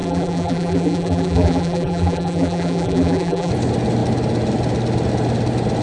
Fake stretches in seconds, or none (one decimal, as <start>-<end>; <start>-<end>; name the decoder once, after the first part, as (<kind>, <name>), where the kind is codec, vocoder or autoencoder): 0.0-3.5 (vocoder, BigVGAN v2)